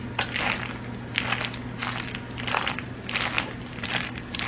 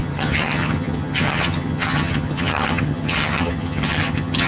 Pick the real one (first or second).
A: first